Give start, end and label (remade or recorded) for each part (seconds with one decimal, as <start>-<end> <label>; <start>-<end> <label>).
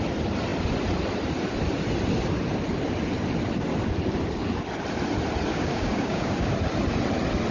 0.0-5.5 recorded; 5.5-6.5 remade; 6.5-7.5 recorded